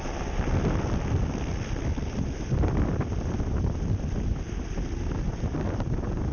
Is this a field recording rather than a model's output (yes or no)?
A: yes